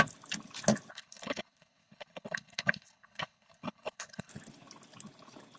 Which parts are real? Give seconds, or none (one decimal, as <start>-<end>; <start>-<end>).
0.0-0.9; 4.3-5.6